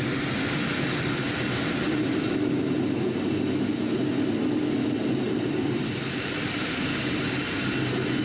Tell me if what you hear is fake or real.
real